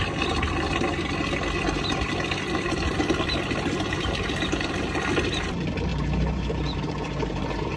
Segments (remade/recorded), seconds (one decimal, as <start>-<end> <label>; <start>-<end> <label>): 0.0-5.9 recorded; 5.9-7.8 remade